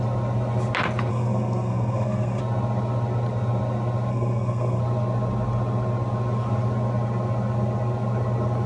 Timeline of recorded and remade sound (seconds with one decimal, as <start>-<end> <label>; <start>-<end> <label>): 0.0-1.1 recorded; 1.1-2.4 remade; 2.4-4.1 recorded; 4.1-4.8 remade; 4.8-8.7 recorded